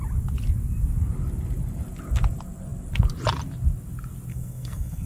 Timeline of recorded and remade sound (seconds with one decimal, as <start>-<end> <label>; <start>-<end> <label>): 0.0-4.3 recorded; 4.3-5.1 remade